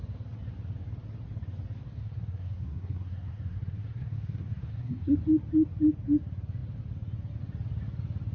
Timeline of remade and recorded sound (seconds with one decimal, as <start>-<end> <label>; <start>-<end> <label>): 0.0-2.0 recorded; 2.0-5.2 remade; 5.2-8.3 recorded